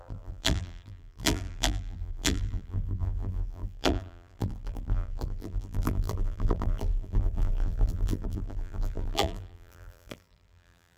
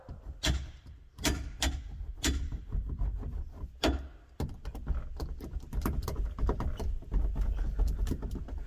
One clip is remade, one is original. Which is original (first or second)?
second